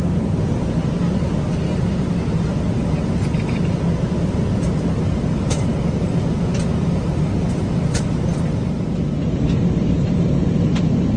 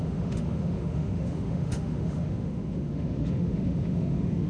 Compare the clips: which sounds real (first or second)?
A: first